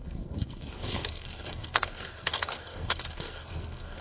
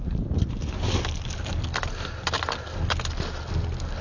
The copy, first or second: first